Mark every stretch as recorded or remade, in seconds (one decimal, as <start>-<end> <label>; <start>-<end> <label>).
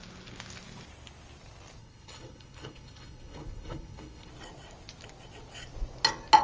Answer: 0.0-1.8 recorded; 1.8-4.3 remade; 4.3-6.4 recorded